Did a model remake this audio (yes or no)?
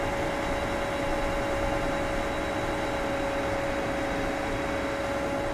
no